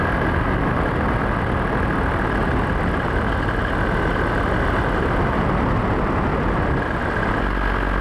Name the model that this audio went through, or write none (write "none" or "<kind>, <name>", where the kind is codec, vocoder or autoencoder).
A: none